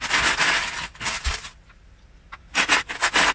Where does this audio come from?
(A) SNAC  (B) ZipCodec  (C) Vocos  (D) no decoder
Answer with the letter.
D